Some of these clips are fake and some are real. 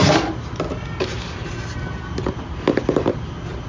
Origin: real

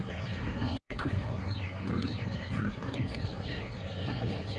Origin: fake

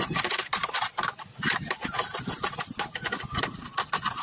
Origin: real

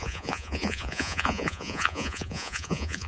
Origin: fake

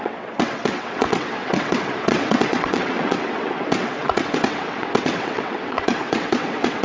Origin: fake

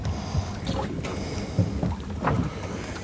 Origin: real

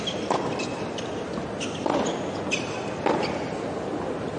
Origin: real